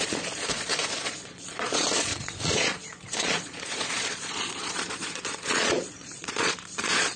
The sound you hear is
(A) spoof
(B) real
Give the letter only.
A